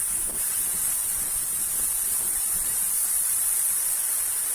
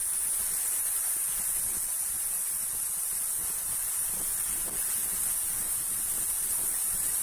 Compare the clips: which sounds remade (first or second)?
first